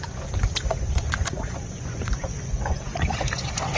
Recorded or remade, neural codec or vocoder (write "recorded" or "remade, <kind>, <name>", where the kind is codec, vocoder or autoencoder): remade, vocoder, Vocos